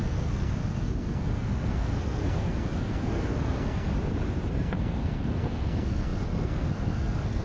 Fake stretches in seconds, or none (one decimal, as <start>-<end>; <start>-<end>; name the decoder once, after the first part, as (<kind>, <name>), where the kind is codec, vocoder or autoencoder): 0.0-3.9 (codec, SNAC); 4.5-7.4